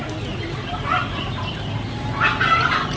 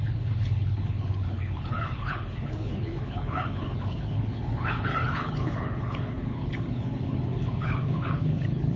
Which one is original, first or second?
first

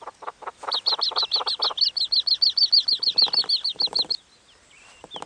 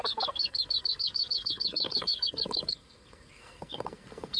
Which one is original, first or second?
first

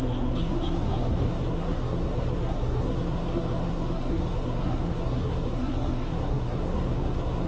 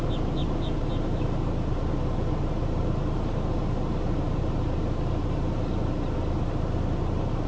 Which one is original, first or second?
second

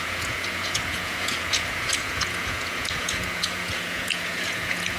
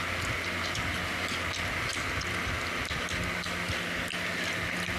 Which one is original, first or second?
second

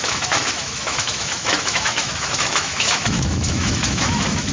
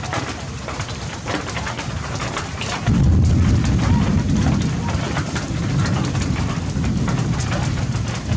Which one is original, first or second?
second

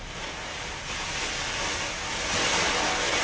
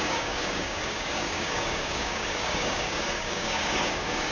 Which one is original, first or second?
first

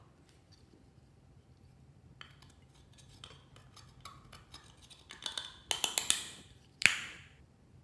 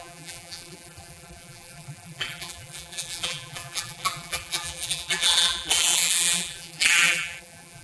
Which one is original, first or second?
first